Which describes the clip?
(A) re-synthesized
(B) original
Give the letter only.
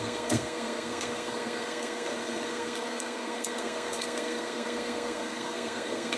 A